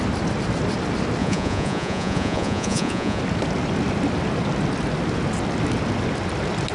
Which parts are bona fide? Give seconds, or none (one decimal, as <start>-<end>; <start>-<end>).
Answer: 0.0-1.2; 3.2-6.7